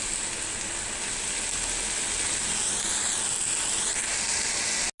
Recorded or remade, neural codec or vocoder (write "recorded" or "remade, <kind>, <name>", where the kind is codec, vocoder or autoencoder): recorded